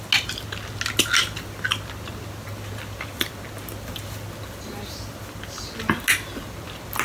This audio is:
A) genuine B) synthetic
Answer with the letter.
A